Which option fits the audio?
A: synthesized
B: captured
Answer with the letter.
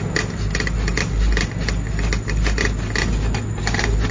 B